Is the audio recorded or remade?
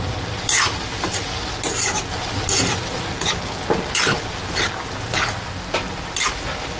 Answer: recorded